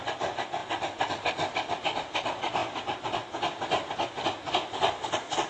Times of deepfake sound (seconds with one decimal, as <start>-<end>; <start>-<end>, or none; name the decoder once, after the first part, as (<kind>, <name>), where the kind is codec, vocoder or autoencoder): none